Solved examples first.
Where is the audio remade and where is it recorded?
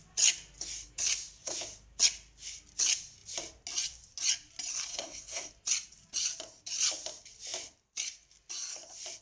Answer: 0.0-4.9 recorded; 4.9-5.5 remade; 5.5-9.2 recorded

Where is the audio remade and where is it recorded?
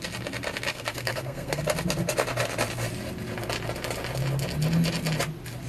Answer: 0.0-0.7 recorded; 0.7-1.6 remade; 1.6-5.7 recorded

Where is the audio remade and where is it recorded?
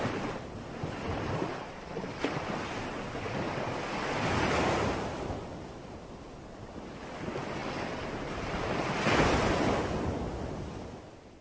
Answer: 0.0-11.4 recorded